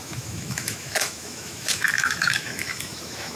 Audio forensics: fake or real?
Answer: fake